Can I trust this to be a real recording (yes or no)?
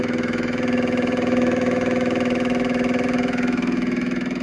no